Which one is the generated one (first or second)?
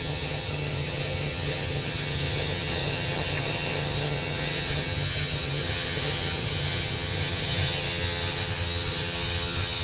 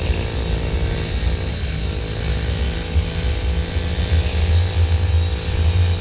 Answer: first